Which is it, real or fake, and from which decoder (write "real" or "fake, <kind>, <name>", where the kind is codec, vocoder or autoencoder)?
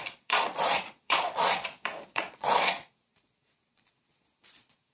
fake, vocoder, Vocos